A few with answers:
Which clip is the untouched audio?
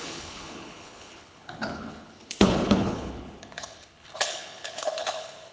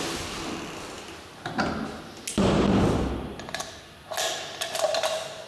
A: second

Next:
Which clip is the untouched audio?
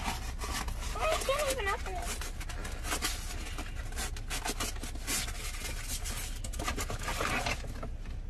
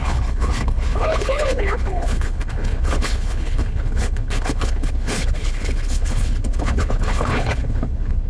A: first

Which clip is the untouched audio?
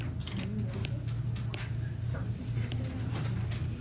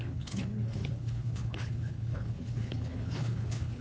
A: first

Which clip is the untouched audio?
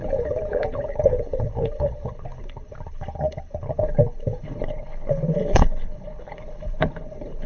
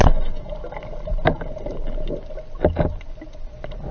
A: second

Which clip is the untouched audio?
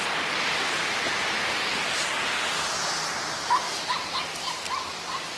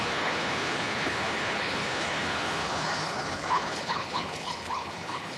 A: first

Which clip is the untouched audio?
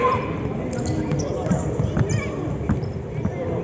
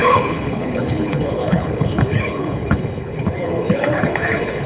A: first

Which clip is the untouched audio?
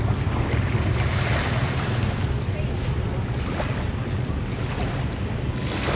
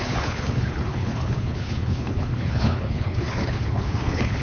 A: first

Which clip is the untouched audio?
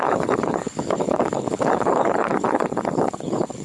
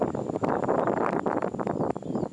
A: second